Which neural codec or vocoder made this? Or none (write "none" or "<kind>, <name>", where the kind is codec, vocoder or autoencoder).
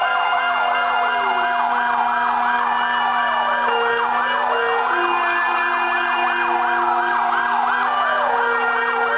none